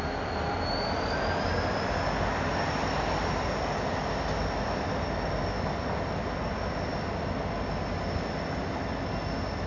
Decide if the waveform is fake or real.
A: real